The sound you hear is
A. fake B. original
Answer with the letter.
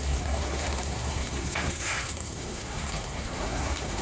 A